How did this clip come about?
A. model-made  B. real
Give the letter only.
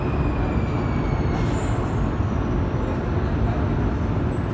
B